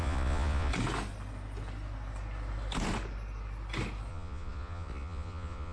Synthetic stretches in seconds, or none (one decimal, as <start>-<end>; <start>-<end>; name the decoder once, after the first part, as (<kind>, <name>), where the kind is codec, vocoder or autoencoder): 0.0-0.7 (vocoder, Vocos); 4.1-5.7

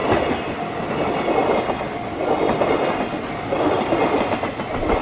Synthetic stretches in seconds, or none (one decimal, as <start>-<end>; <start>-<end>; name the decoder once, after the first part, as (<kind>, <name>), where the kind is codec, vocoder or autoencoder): none